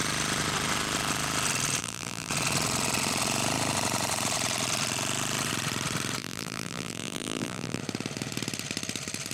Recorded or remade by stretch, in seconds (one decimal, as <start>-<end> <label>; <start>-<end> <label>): 0.0-1.8 recorded; 1.8-2.3 remade; 2.3-6.2 recorded; 6.2-7.8 remade; 7.8-9.3 recorded